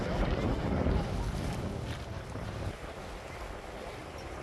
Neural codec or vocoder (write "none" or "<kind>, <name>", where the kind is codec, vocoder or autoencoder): none